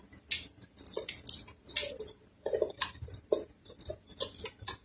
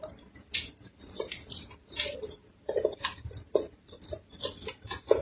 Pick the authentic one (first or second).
first